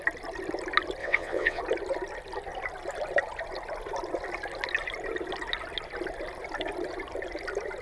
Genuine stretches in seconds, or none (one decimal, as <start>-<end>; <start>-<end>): 0.0-1.0; 1.6-7.8